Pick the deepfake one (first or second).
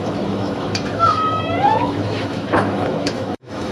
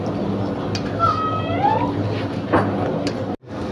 first